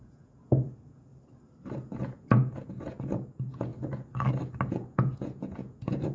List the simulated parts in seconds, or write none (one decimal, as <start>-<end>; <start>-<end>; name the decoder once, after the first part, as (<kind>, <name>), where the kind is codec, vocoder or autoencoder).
0.0-1.1 (vocoder, Vocos); 2.0-3.7; 4.7-6.1